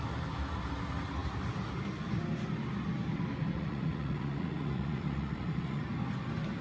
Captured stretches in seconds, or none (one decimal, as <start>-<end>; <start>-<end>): 0.0-3.5; 5.8-6.6